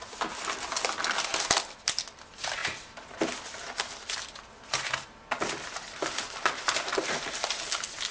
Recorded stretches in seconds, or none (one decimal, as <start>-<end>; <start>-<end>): 0.0-8.1